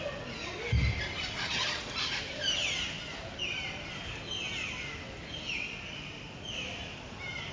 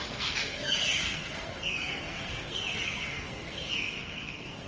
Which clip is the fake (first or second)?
second